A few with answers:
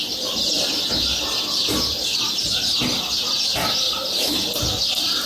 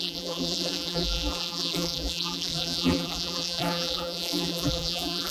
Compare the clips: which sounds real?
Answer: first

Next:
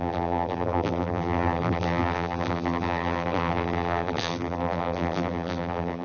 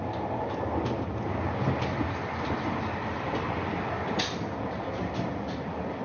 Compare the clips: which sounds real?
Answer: second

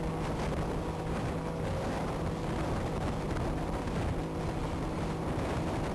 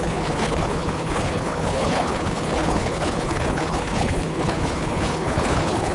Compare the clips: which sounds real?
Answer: first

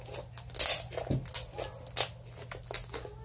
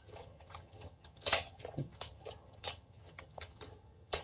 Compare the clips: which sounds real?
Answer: first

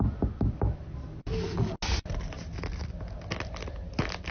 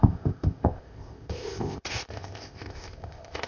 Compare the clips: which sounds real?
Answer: first